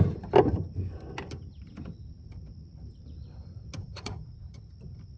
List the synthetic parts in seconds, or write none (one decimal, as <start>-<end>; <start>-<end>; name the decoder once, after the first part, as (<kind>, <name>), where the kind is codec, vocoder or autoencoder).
3.8-4.6 (vocoder, Vocos)